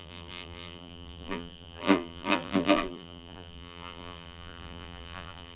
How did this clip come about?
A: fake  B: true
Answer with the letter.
A